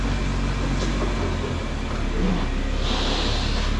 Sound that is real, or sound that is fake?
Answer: real